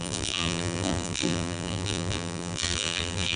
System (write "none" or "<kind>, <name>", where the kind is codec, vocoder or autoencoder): vocoder, BigVGAN v2